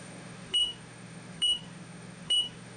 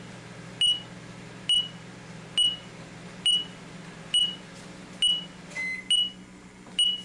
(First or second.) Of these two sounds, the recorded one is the second